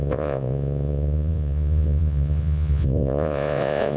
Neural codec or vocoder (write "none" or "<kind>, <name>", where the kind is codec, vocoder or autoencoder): vocoder, Vocos